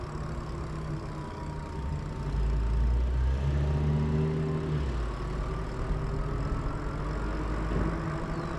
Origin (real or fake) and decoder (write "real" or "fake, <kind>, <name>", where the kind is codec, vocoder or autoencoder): real